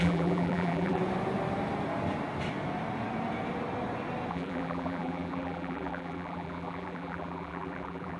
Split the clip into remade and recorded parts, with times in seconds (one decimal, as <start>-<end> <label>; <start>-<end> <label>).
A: 0.0-1.0 remade; 1.0-4.3 recorded; 4.3-8.2 remade